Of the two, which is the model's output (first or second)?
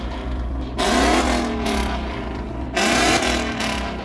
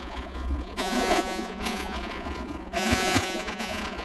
second